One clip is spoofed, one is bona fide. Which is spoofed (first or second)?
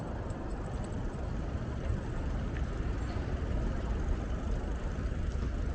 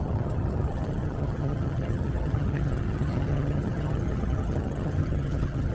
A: second